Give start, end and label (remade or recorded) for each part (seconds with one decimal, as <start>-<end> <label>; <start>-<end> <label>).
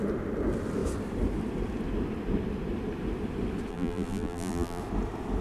0.0-3.7 recorded; 3.7-4.8 remade; 4.8-5.4 recorded